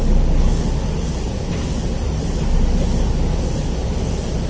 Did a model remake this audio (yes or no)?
no